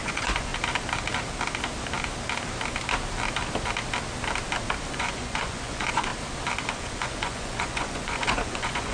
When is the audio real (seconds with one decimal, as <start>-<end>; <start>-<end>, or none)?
0.5-4.9; 6.1-6.7